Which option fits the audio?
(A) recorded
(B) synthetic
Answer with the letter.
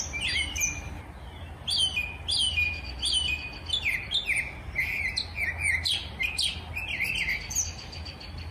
A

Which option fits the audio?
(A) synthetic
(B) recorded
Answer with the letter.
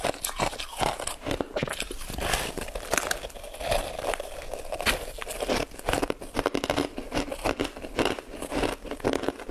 B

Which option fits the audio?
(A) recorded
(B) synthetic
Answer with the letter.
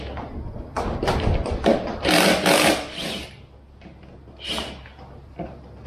A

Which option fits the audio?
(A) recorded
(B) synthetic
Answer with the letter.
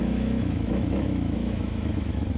B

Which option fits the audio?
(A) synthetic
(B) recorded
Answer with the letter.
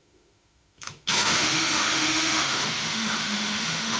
A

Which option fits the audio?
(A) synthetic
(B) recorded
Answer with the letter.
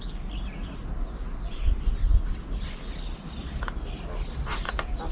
B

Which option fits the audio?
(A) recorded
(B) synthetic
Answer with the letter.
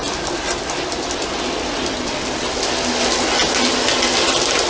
A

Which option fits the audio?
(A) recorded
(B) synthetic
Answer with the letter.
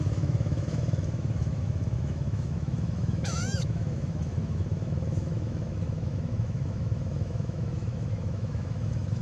B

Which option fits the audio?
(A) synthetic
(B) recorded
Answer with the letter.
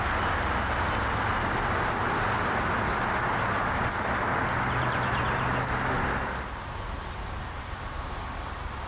B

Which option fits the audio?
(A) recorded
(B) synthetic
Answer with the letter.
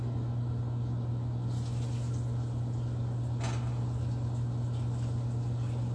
A